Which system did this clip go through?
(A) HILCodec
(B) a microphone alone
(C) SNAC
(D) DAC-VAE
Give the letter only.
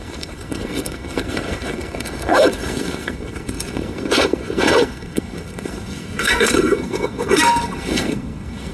C